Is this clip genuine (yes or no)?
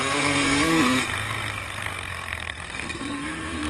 no